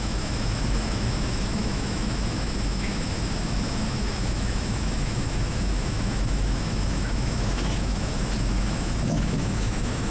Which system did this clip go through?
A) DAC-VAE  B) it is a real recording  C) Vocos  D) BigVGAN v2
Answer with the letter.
A